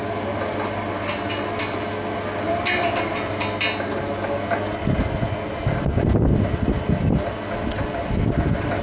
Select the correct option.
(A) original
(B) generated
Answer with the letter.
A